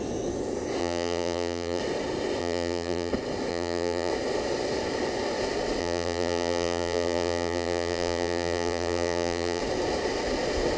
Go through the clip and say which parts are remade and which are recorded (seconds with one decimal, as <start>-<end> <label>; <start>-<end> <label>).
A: 0.0-0.8 recorded; 0.8-1.8 remade; 1.8-2.4 recorded; 2.4-3.1 remade; 3.1-3.5 recorded; 3.5-4.1 remade; 4.1-5.8 recorded; 5.8-9.6 remade; 9.6-10.8 recorded